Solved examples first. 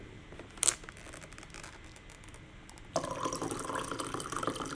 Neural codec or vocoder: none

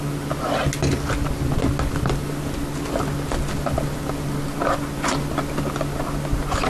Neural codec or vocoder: none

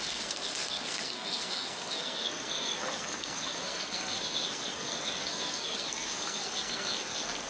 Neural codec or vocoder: codec, SNAC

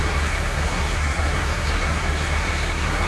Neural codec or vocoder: codec, SNAC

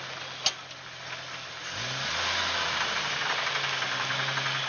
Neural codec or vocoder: none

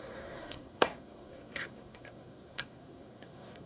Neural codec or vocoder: codec, SNAC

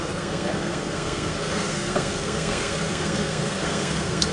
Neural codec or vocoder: codec, SNAC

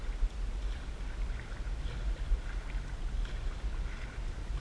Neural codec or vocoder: none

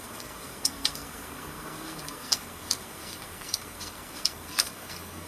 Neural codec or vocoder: codec, SNAC